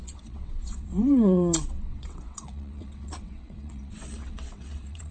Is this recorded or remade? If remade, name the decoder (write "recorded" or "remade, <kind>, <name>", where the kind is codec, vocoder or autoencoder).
remade, vocoder, WaveNeXt